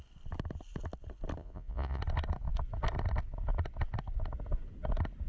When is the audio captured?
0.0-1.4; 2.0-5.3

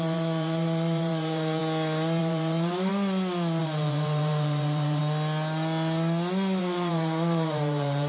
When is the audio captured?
1.6-2.2; 2.9-3.6; 5.0-6.6

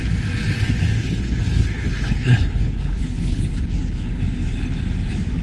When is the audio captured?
0.0-1.0; 4.2-5.4

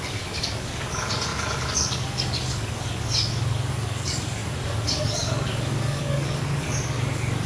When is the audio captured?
none

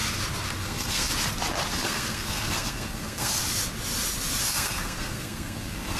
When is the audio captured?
0.0-0.6; 1.1-1.7; 3.4-4.4

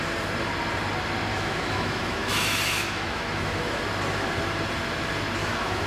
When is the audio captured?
0.0-1.3; 3.8-5.4

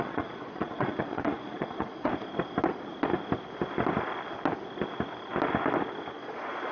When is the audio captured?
2.1-6.1